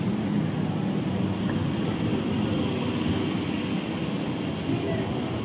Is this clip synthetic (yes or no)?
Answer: no